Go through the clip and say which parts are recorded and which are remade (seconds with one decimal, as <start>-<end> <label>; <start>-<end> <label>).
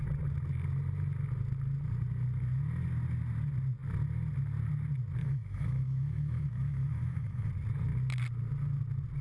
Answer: 0.0-5.2 recorded; 5.2-7.5 remade; 7.5-9.2 recorded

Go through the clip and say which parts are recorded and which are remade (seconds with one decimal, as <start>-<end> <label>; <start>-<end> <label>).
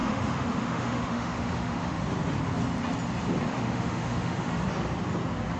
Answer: 0.0-2.0 remade; 2.0-3.5 recorded; 3.5-4.5 remade; 4.5-5.6 recorded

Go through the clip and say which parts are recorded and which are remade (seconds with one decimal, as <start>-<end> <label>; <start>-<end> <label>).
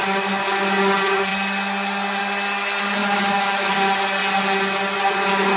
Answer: 0.0-3.0 recorded; 3.0-3.7 remade; 3.7-5.6 recorded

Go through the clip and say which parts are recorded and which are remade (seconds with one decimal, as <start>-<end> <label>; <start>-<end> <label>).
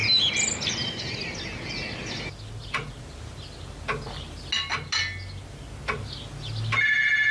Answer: 0.0-7.3 recorded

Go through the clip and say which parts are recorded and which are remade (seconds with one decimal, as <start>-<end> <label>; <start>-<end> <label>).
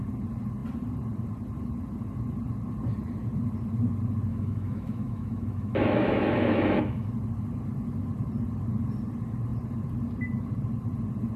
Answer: 0.0-4.3 recorded; 4.3-7.1 remade; 7.1-11.4 recorded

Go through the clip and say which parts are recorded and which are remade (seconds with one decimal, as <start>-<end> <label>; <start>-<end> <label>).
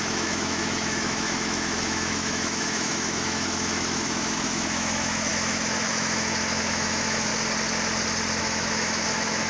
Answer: 0.0-7.3 remade; 7.3-8.4 recorded; 8.4-9.5 remade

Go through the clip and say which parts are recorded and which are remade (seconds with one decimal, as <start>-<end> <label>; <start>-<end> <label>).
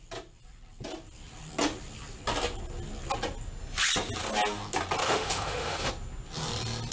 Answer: 0.0-5.0 recorded; 5.0-5.9 remade; 5.9-6.9 recorded